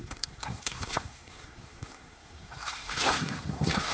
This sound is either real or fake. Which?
fake